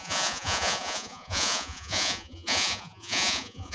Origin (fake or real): fake